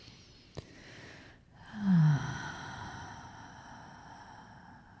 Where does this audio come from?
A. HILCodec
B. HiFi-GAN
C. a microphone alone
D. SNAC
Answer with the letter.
C